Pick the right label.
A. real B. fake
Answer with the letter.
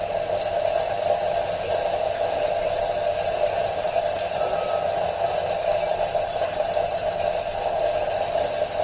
A